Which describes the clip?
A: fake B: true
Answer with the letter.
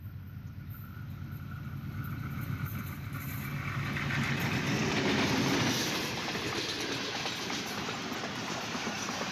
B